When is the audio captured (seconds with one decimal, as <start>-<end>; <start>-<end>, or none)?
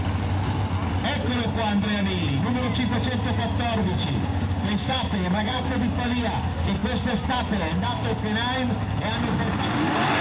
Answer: 0.0-3.8; 5.6-10.2